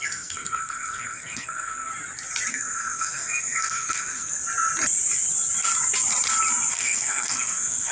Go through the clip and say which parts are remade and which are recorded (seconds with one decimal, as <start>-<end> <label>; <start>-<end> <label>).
0.0-1.9 remade; 1.9-2.5 recorded; 2.5-4.4 remade; 4.4-6.7 recorded; 6.7-7.9 remade